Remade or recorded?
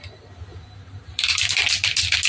recorded